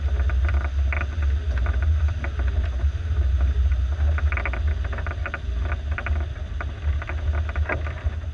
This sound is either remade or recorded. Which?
recorded